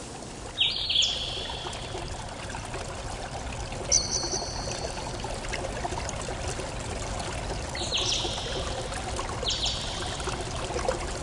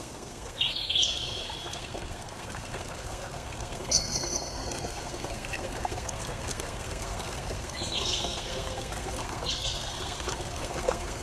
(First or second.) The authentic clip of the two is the first